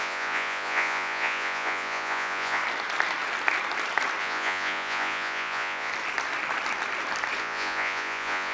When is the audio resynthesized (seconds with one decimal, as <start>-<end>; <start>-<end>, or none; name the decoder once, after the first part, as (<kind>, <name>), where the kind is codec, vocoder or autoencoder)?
0.0-2.6 (vocoder, Vocos); 4.2-5.9; 7.4-8.5

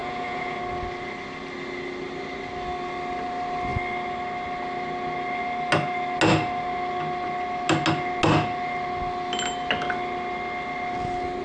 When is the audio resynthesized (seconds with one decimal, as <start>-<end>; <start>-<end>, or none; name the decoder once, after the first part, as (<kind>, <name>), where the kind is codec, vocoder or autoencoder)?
0.0-0.6 (vocoder, Vocos)

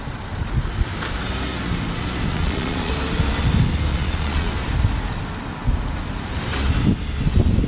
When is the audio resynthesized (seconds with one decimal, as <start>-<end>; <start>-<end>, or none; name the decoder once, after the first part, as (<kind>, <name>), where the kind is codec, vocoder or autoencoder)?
2.3-2.9 (vocoder, Vocos); 3.9-4.5

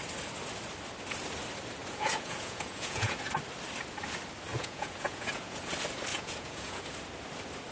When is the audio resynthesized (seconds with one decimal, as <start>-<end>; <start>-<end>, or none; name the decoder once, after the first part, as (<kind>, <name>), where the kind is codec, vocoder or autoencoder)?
1.8-3.2 (vocoder, Vocos); 4.5-5.6; 6.1-6.8

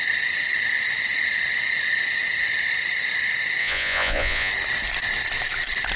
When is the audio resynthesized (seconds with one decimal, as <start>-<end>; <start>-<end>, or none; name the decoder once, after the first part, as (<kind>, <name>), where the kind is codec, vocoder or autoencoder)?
3.6-4.5 (vocoder, Vocos)

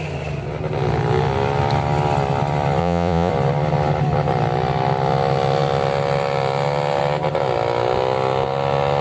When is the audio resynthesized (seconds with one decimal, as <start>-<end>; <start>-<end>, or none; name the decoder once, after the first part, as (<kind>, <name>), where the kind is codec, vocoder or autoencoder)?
2.8-3.3 (vocoder, Vocos)

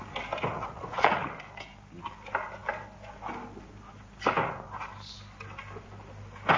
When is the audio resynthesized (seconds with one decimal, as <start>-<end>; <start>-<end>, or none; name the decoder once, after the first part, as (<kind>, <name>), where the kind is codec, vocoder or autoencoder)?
0.5-1.3 (vocoder, Vocos)